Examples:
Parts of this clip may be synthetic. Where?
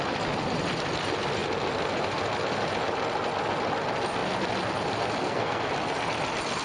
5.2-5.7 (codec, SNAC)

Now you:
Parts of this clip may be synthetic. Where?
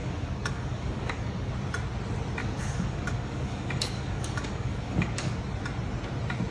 0.0-1.5 (codec, DAC); 2.4-5.4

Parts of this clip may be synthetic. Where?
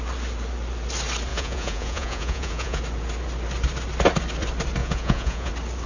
1.3-2.8 (vocoder, Vocos); 4.8-5.5